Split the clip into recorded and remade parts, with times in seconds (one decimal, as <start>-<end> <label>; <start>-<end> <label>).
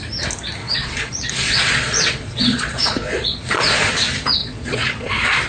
0.0-0.6 recorded; 0.6-3.9 remade; 3.9-4.4 recorded; 4.4-5.1 remade; 5.1-5.5 recorded